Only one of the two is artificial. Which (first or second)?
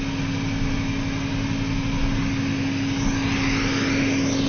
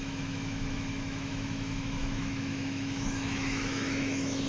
second